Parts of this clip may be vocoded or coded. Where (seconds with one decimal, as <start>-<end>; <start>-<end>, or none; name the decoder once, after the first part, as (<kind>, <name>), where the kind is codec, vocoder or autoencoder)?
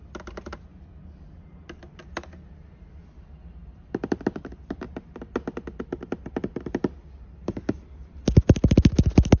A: 3.7-4.8 (vocoder, BigVGAN v2)